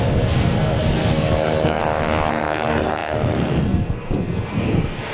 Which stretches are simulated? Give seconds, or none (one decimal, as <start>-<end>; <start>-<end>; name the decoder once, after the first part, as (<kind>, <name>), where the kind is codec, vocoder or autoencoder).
0.0-1.8 (codec, SNAC); 2.3-5.1